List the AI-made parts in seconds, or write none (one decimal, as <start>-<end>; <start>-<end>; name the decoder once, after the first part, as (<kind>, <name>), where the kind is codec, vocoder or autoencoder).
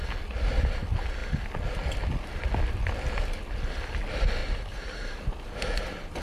4.4-5.2 (vocoder, BigVGAN v2)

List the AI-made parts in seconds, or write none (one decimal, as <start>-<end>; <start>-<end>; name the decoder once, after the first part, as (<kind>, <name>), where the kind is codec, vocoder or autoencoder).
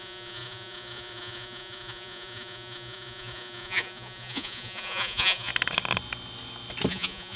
0.0-5.5 (vocoder, Vocos); 6.9-7.4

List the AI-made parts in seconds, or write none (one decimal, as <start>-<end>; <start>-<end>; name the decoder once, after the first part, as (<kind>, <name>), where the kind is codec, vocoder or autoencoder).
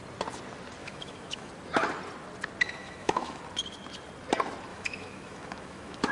0.8-1.5 (autoencoder, DAC-VAE); 2.8-3.4; 4.7-6.1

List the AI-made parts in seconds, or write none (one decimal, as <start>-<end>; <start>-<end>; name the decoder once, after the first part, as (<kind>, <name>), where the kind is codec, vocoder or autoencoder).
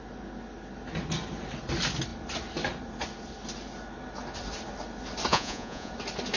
5.3-5.9 (vocoder, Vocos)